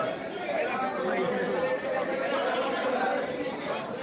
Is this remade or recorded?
recorded